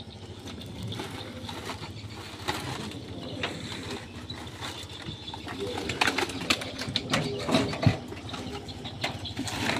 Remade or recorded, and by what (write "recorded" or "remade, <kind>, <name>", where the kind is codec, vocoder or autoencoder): recorded